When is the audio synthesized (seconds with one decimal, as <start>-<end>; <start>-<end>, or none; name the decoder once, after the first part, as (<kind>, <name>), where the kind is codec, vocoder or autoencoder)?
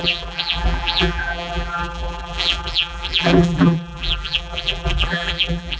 0.0-5.8 (vocoder, BigVGAN v2)